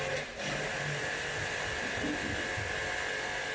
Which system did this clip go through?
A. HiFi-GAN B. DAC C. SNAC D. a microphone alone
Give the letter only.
D